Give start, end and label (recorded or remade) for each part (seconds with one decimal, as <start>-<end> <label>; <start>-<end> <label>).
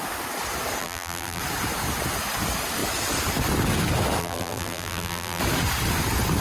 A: 0.0-0.8 recorded; 0.8-1.4 remade; 1.4-4.2 recorded; 4.2-5.4 remade; 5.4-6.4 recorded